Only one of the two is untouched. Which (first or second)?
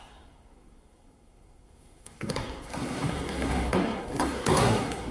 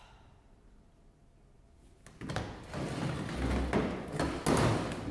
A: second